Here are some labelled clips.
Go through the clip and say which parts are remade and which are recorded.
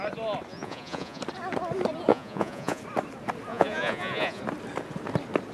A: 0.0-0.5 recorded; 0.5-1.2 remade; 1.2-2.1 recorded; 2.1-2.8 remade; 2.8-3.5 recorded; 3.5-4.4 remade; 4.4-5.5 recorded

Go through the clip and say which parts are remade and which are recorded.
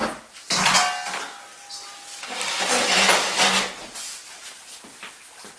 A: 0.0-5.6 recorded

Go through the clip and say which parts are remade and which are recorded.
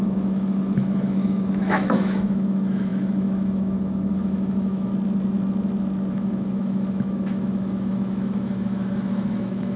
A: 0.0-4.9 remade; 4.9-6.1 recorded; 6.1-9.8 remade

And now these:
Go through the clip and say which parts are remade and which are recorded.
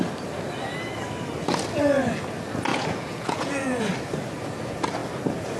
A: 0.0-2.7 recorded; 2.7-3.8 remade; 3.8-5.6 recorded